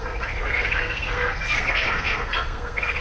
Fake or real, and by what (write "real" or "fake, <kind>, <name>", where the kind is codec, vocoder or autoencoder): fake, codec, SNAC